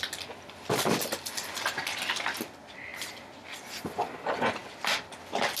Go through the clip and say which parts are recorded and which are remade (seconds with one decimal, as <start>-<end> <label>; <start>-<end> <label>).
0.0-5.6 recorded